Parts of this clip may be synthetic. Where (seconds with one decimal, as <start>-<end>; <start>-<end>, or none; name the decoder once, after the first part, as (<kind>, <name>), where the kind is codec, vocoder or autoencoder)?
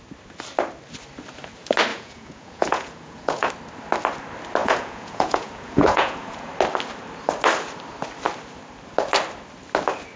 1.9-3.5 (vocoder, Vocos); 4.6-6.5